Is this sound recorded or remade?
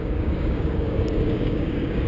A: remade